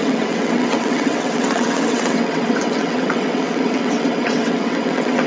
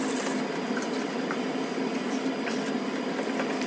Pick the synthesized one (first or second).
first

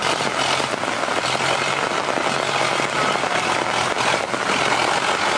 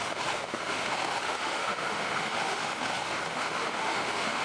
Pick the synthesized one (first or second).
second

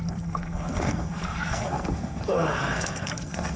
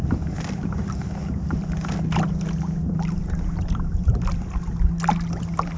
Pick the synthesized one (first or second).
first